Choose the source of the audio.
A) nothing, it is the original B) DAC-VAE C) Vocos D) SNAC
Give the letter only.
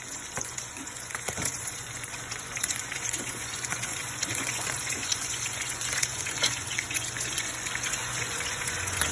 C